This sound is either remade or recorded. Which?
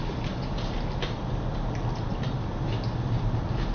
recorded